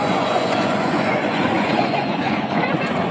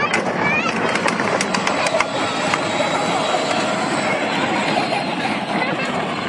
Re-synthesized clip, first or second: first